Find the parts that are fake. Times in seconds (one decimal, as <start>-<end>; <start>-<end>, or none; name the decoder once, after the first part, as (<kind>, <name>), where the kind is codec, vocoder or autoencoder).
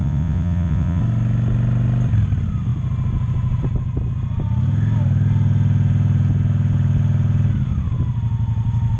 0.0-1.0 (vocoder, WaveNeXt)